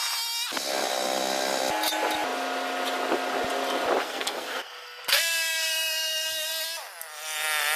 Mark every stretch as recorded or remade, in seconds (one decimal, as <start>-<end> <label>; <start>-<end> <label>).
0.0-4.0 recorded; 4.0-6.5 remade; 6.5-7.8 recorded